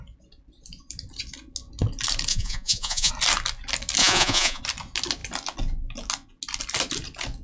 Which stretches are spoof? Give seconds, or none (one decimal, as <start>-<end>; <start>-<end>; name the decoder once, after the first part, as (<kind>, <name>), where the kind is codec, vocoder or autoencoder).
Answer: 2.3-3.1 (vocoder, Vocos); 4.0-4.6